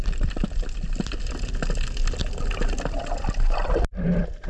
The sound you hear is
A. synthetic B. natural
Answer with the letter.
B